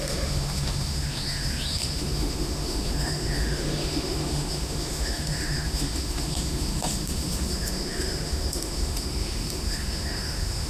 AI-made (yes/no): yes